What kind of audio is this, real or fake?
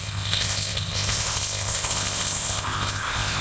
fake